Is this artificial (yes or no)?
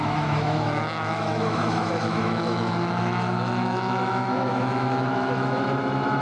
yes